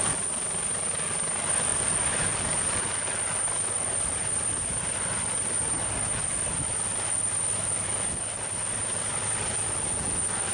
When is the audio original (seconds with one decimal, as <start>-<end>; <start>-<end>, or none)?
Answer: 0.0-10.5